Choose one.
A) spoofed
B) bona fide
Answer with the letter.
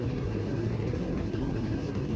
A